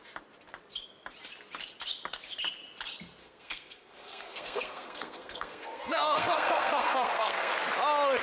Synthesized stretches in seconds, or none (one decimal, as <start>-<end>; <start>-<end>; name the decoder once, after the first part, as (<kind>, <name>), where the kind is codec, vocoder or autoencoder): 3.2-7.5 (codec, SNAC)